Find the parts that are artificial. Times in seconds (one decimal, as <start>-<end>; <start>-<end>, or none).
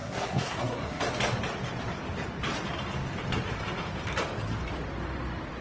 0.0-1.0